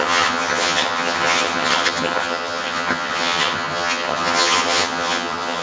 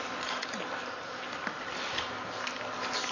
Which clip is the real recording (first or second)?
second